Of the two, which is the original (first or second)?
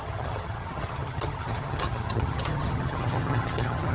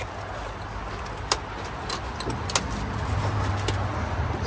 second